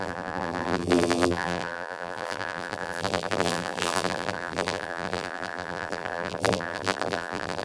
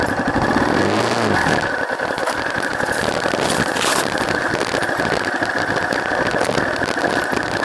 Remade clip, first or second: first